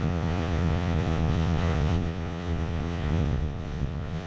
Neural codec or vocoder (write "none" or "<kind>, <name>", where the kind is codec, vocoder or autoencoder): vocoder, Vocos